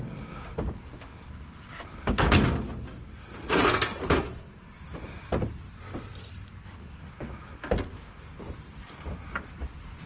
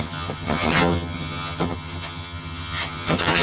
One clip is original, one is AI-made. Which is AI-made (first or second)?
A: second